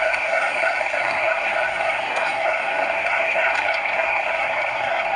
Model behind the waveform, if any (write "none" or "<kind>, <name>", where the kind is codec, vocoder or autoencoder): codec, SNAC